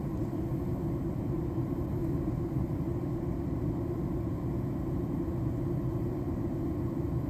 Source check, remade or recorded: recorded